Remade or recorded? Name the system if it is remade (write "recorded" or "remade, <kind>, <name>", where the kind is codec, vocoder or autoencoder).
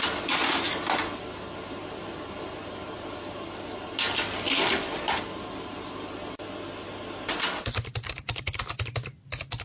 recorded